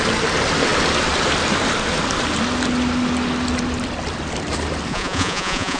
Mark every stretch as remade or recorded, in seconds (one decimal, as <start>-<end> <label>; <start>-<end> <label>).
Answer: 0.0-4.9 recorded; 4.9-5.8 remade